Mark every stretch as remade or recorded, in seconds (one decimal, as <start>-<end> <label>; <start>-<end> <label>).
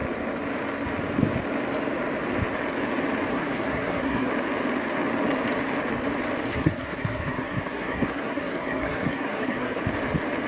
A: 0.0-3.3 recorded; 3.3-4.3 remade; 4.3-6.5 recorded; 6.5-9.8 remade; 9.8-10.5 recorded